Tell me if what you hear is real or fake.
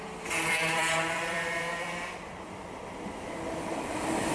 fake